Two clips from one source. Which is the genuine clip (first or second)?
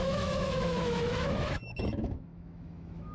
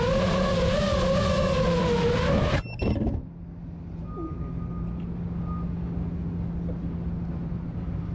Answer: second